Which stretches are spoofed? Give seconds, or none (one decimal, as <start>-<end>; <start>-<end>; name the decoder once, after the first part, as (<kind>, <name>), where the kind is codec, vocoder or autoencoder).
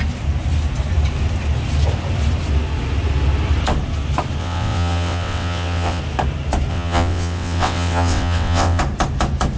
4.4-6.0 (vocoder, WaveNeXt); 6.7-8.8